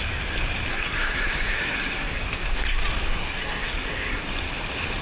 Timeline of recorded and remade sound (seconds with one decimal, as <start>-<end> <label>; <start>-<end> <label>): 0.0-0.7 recorded; 0.7-2.2 remade; 2.2-3.4 recorded; 3.4-4.2 remade; 4.2-5.0 recorded